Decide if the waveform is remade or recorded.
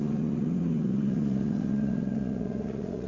remade